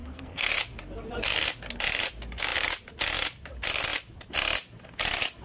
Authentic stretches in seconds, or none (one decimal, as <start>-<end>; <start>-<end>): 0.5-5.4